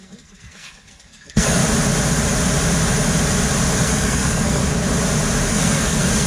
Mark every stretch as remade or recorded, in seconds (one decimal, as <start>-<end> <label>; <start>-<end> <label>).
0.0-1.6 remade; 1.6-3.8 recorded; 3.8-4.6 remade; 4.6-5.5 recorded; 5.5-6.3 remade